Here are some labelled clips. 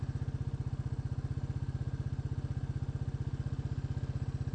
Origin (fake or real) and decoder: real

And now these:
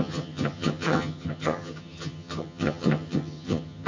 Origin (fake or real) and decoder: fake, vocoder, HiFi-GAN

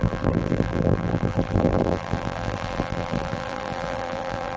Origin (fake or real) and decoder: fake, vocoder, BigVGAN v2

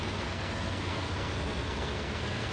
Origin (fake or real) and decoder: fake, codec, SNAC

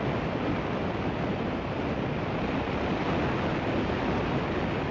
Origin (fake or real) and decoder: real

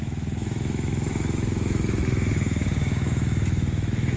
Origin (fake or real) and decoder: fake, autoencoder, DAC-VAE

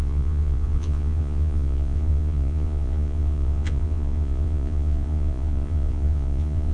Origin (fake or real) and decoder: fake, vocoder, Vocos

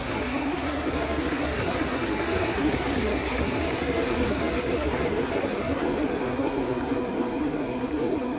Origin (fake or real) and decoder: fake, codec, SNAC